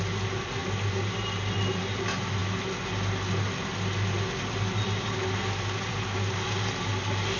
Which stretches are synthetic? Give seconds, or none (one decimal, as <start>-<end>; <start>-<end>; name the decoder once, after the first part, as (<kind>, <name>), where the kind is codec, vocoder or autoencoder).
none